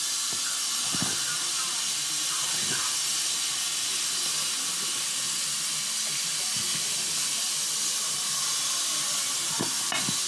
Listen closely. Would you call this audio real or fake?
real